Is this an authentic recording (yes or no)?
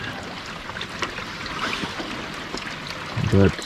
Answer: yes